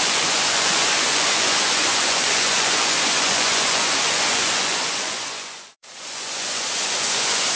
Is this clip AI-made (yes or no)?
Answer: yes